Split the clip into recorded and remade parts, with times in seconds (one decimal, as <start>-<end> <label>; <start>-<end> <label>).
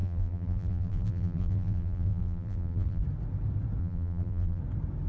0.0-3.0 remade; 3.0-3.8 recorded; 3.8-4.6 remade; 4.6-5.1 recorded